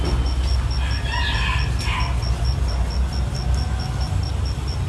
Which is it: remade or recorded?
recorded